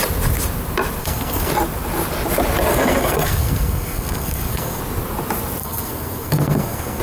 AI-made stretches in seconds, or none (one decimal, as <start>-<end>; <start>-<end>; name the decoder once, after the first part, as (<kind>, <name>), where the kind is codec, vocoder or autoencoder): 1.0-1.5 (codec, SNAC); 2.7-4.8; 5.6-7.0